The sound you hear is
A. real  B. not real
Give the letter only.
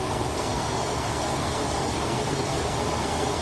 B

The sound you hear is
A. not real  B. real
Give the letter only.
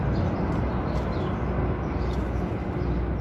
B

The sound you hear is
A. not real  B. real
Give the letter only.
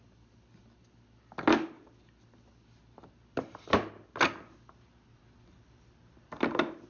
B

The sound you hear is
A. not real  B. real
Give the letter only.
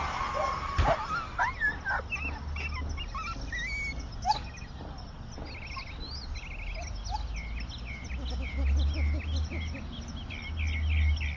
B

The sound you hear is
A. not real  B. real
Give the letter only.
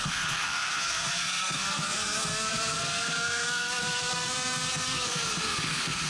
A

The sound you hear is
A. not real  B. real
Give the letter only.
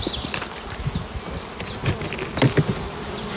B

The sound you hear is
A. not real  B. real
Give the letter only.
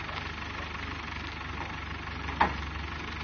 B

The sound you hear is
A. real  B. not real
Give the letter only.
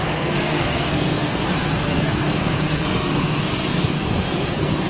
B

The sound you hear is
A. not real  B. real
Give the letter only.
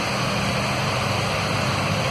B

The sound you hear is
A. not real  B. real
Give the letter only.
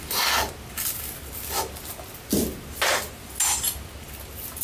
B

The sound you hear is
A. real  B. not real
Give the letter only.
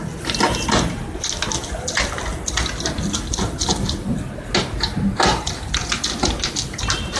A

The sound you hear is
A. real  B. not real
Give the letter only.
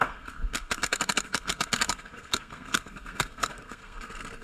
B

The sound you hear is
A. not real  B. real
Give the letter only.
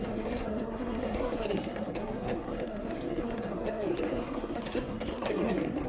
A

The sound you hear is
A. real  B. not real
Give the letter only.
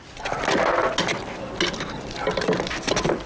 A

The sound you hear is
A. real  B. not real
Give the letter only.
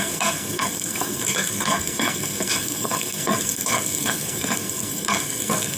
B